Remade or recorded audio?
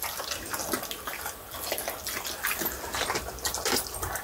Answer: recorded